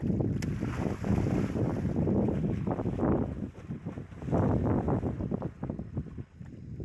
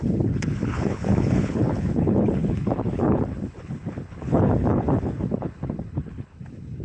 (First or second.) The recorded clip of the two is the first